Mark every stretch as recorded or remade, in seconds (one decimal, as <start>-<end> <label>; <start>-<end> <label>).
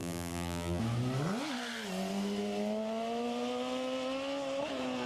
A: 0.0-0.8 remade; 0.8-5.1 recorded